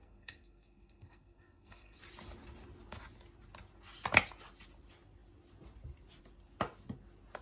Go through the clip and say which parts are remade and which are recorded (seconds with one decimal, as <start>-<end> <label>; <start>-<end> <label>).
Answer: 0.0-2.0 remade; 2.0-7.4 recorded